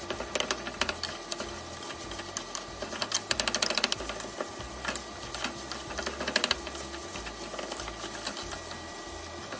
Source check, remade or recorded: recorded